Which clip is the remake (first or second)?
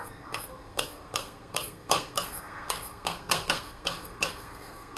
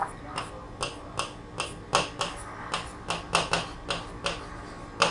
first